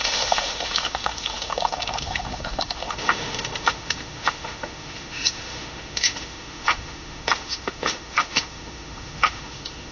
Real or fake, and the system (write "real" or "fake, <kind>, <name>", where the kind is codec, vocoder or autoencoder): fake, autoencoder, DAC-VAE